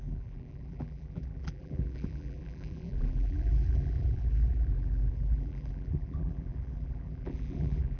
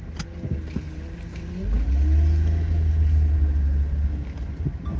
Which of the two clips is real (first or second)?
second